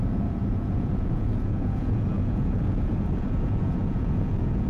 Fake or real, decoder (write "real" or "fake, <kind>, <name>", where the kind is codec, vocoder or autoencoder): fake, vocoder, Vocos